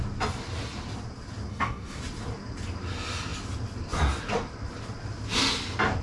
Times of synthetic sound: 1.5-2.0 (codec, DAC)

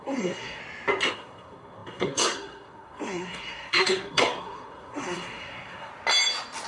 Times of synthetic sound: 0.0-0.6 (codec, SNAC); 1.1-5.9